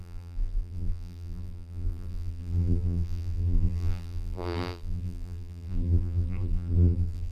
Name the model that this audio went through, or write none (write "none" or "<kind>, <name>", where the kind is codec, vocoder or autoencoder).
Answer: vocoder, BigVGAN v2